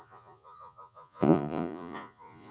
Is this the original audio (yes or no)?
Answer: no